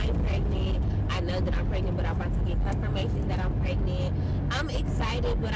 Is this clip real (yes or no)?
yes